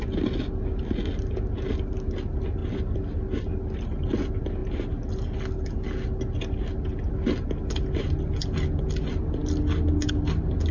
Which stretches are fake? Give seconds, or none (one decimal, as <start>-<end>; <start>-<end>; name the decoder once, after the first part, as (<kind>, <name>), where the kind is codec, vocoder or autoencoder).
none